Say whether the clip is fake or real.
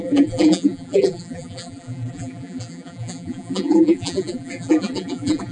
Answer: fake